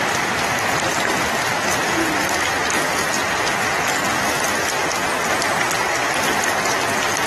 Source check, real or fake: real